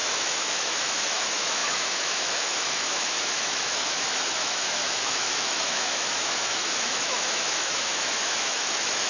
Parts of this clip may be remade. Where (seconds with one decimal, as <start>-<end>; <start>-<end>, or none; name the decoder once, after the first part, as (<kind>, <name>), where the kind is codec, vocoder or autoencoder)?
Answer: 0.0-9.1 (autoencoder, DAC-VAE)